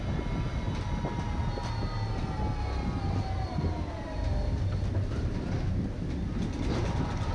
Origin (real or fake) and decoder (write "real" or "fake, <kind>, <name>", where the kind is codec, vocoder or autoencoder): real